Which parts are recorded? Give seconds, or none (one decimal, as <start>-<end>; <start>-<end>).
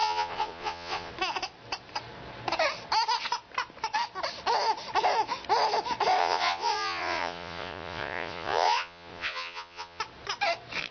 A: 1.1-6.2; 10.0-10.9